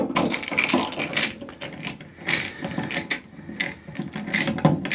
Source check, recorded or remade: recorded